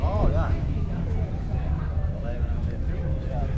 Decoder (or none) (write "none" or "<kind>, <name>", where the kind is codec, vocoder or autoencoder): vocoder, BigVGAN v2